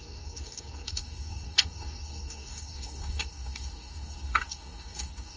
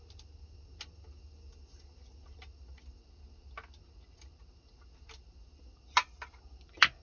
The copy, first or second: first